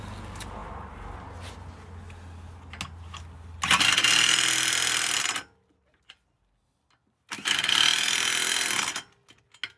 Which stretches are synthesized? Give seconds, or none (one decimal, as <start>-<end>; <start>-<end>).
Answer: none